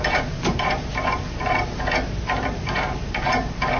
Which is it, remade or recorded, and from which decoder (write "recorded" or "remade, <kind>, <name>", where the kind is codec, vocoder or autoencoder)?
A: remade, vocoder, BigVGAN v2